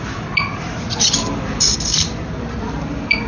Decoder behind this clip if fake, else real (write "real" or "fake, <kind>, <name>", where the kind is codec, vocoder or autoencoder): fake, vocoder, BigVGAN v2